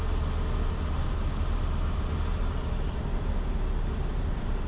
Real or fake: real